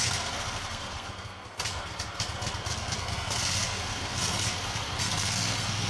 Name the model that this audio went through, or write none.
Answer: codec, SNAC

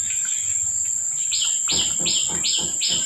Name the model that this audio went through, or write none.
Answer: none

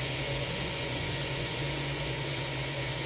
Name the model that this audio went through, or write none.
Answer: vocoder, Vocos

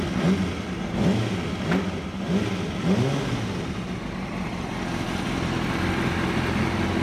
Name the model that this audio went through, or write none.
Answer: none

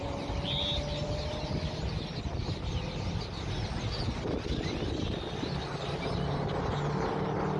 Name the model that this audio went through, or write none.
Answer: none